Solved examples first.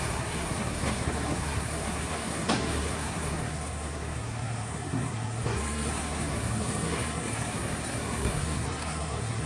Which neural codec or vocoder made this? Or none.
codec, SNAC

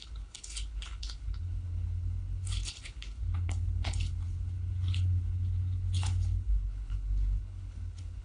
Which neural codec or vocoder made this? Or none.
codec, HILCodec